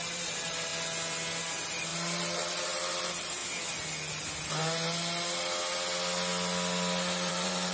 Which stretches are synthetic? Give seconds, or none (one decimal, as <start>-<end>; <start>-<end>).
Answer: 0.0-0.7; 1.4-3.4; 7.3-7.7